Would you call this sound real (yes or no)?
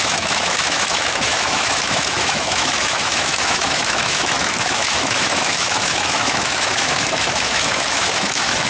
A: no